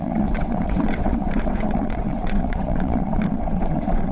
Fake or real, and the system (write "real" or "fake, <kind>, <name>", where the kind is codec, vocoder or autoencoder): fake, vocoder, WaveNeXt